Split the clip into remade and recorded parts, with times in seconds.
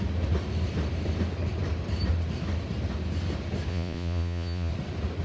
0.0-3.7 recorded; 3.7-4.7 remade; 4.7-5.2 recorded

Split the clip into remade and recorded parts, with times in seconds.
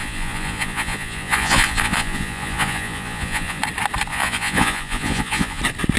0.0-3.6 remade; 3.6-4.1 recorded; 4.1-5.6 remade; 5.6-6.0 recorded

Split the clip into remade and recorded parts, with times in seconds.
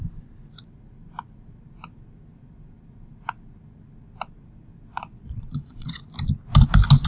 0.0-4.9 recorded; 4.9-6.0 remade; 6.0-7.1 recorded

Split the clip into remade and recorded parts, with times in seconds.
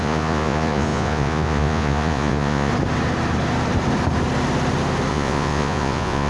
0.0-2.7 remade; 2.7-5.1 recorded; 5.1-6.3 remade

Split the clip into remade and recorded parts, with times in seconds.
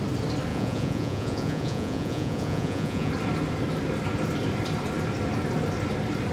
0.0-0.5 recorded; 0.5-3.1 remade; 3.1-6.3 recorded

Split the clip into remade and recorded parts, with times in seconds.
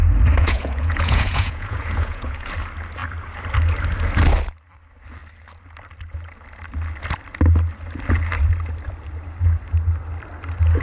0.0-0.4 recorded; 0.4-2.5 remade; 2.5-10.8 recorded